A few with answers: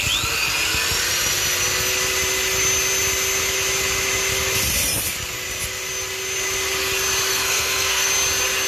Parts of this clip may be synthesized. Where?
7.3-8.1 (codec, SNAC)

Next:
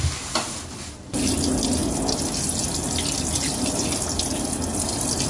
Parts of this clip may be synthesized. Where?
none

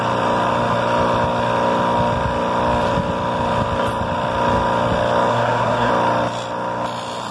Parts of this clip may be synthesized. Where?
5.3-5.9 (codec, SNAC)

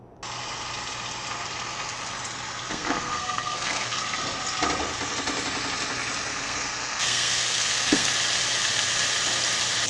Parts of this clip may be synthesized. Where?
2.7-4.0 (codec, SNAC); 6.3-8.1

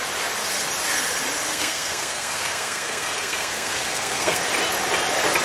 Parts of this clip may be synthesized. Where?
1.5-4.4 (codec, SNAC)

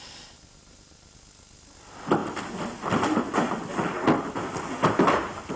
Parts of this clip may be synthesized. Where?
none

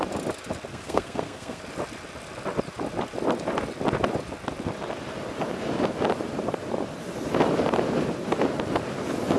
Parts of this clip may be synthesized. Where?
0.7-1.6 (codec, SNAC)

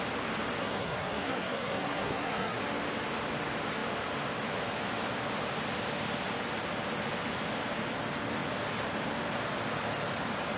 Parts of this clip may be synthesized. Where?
0.6-2.6 (codec, SNAC)